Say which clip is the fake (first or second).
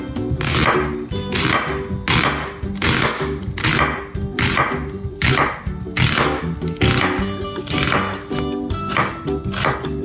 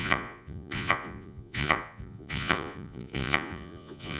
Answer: second